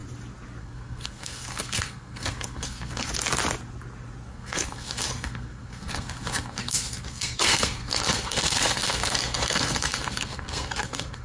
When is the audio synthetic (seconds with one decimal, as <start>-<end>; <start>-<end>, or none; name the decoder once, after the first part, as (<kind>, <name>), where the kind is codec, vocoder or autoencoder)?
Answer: 0.6-3.1 (codec, SNAC); 4.3-11.2